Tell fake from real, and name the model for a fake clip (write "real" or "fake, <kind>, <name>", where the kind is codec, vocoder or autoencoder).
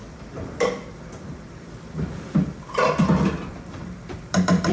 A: fake, vocoder, BigVGAN v2